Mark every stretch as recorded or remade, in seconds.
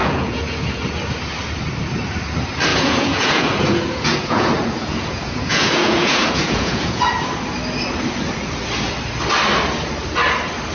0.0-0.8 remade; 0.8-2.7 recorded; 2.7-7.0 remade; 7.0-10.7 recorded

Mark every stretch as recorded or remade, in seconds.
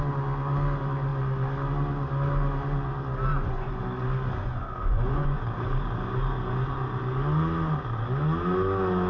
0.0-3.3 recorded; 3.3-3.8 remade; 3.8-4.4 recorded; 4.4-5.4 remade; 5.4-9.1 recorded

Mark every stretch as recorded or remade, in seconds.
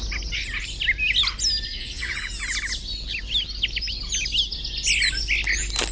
0.0-1.7 recorded; 1.7-2.3 remade; 2.3-5.9 recorded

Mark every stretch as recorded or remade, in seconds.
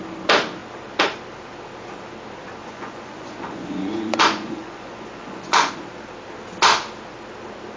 0.0-2.6 recorded; 2.6-5.7 remade; 5.7-7.8 recorded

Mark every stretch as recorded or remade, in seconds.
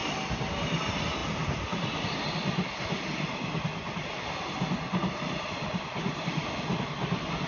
0.0-7.5 recorded